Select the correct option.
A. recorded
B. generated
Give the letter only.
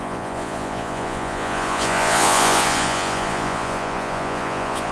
B